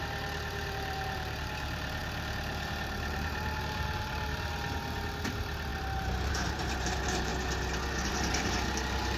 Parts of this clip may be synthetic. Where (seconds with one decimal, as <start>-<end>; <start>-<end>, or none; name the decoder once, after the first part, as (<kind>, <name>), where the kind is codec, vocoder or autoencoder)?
0.0-7.3 (vocoder, BigVGAN v2); 8.1-9.2